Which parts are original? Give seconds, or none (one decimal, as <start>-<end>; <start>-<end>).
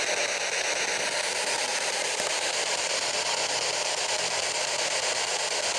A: 0.0-1.7; 4.7-5.8